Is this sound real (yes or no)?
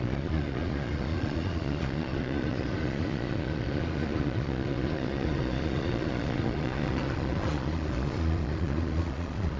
no